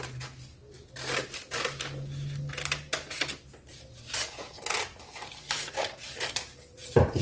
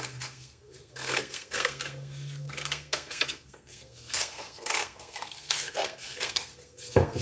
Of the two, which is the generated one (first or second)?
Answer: second